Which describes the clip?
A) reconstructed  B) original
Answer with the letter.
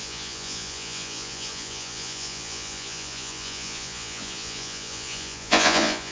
A